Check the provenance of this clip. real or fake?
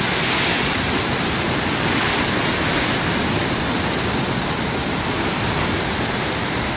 real